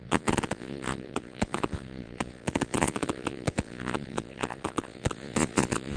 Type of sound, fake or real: fake